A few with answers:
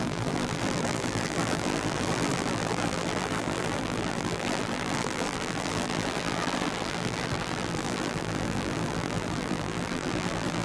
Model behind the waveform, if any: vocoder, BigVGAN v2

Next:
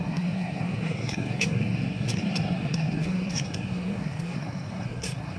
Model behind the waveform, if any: codec, SNAC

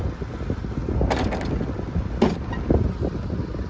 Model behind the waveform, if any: none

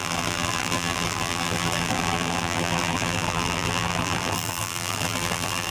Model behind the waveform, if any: vocoder, BigVGAN v2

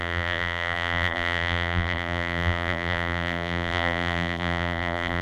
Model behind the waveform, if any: vocoder, BigVGAN v2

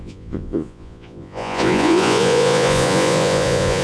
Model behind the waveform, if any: vocoder, Vocos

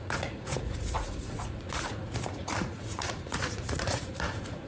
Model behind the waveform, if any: vocoder, Vocos